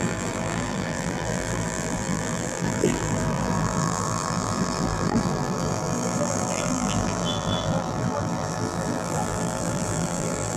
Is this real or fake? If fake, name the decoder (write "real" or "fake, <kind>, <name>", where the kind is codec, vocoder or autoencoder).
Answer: fake, vocoder, BigVGAN v2